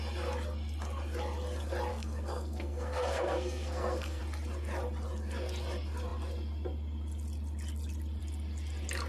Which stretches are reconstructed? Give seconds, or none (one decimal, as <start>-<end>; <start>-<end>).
1.9-4.2